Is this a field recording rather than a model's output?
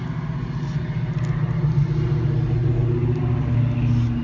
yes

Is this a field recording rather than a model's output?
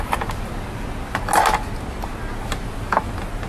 yes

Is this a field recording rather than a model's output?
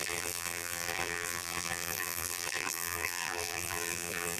no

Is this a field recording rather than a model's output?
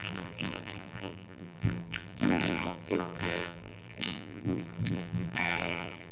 no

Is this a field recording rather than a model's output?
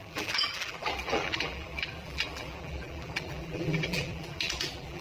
no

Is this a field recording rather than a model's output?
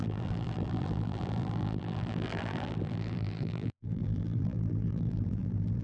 no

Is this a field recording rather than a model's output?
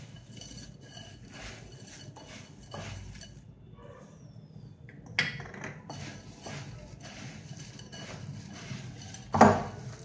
yes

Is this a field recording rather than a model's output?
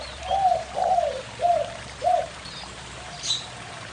no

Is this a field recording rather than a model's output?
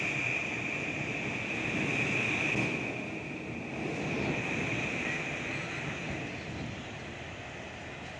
yes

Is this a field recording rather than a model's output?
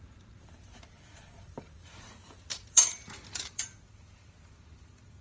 no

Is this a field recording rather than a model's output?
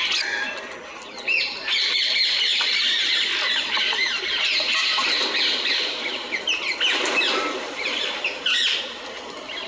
no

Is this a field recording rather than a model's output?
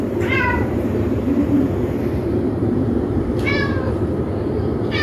no